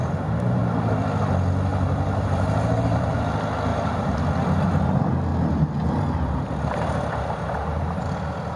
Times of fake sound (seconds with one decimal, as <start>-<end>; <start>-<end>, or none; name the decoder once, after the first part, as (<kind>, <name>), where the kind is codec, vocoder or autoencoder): 1.7-3.2 (vocoder, BigVGAN v2); 3.7-4.2; 5.3-8.1